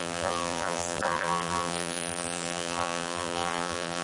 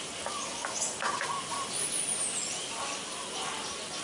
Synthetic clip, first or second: first